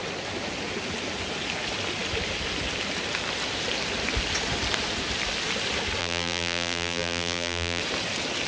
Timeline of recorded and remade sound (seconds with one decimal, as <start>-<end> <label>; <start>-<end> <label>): 0.0-6.0 recorded; 6.0-7.8 remade; 7.8-8.5 recorded